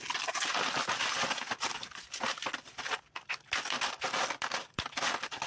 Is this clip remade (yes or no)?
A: no